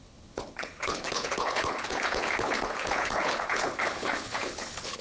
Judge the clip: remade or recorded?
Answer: remade